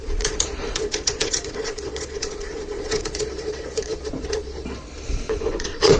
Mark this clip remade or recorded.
remade